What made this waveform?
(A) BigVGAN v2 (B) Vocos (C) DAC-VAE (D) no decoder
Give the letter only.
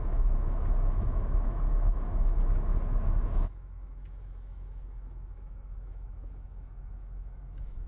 C